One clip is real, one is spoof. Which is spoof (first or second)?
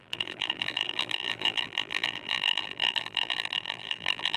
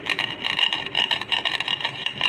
first